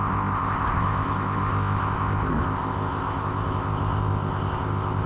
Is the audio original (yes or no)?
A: no